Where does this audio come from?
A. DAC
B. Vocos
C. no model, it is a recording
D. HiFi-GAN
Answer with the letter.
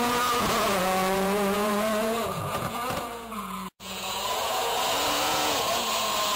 B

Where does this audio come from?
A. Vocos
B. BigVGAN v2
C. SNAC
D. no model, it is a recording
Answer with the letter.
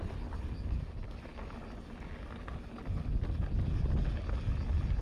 D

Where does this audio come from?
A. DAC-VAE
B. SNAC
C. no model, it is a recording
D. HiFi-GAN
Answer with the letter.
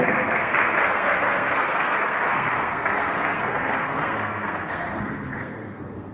B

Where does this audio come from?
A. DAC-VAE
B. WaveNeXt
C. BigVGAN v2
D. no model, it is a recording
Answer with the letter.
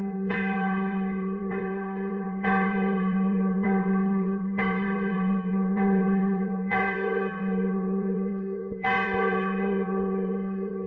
B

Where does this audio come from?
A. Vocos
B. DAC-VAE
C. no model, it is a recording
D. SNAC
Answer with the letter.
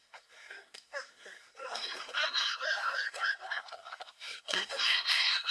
D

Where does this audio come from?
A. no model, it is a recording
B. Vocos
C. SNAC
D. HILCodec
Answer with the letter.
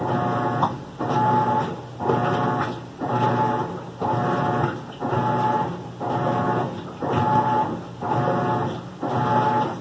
A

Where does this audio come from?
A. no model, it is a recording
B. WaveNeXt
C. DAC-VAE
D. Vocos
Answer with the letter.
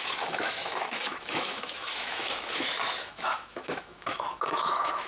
C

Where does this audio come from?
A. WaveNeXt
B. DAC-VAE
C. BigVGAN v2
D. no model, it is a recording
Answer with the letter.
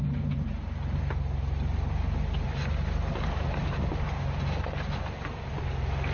D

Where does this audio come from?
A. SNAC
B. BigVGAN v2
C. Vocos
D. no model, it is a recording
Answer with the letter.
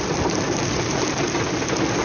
D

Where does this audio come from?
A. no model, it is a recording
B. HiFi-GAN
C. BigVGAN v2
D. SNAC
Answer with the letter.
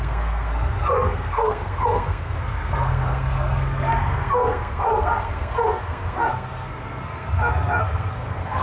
D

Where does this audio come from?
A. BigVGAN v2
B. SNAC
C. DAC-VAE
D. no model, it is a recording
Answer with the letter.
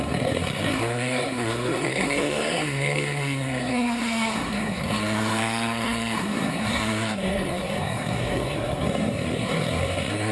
B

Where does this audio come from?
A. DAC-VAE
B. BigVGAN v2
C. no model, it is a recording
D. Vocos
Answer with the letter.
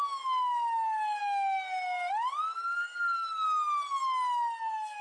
C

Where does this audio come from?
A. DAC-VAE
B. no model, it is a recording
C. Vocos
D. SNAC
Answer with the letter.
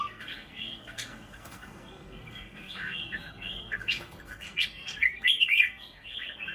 D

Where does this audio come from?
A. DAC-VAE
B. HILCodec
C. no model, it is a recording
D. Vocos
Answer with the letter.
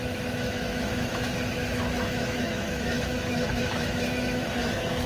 A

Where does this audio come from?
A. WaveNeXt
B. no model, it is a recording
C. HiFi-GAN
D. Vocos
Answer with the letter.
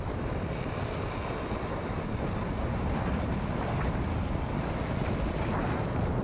B